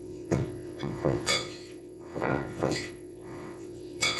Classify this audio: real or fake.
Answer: fake